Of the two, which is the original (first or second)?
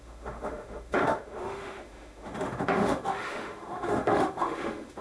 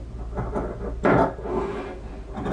second